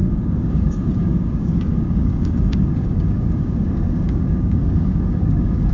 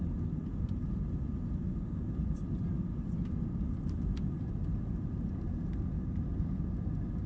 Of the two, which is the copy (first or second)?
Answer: first